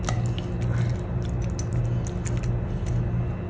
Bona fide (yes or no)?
yes